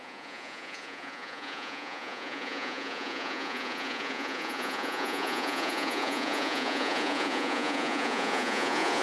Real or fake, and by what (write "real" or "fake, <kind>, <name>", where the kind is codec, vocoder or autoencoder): fake, vocoder, Vocos